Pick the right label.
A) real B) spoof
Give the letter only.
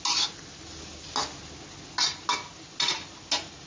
A